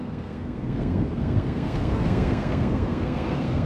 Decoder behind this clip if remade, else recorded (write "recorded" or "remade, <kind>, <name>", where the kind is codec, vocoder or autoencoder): remade, codec, SNAC